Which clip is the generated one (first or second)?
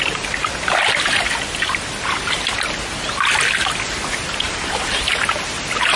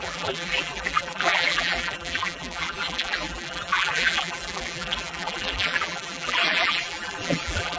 second